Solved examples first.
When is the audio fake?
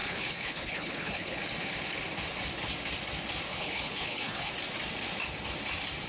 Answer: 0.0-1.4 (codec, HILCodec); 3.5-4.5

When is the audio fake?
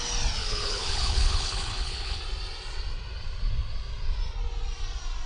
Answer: 0.4-2.2 (codec, HILCodec)